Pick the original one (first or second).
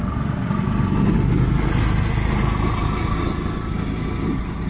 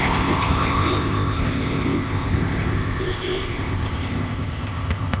first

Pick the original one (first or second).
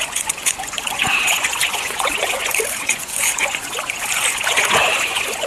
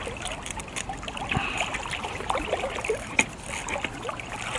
second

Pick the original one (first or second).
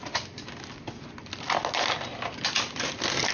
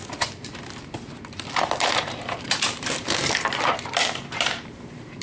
first